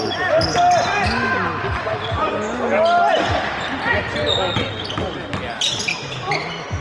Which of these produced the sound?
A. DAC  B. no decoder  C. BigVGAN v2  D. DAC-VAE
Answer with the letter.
B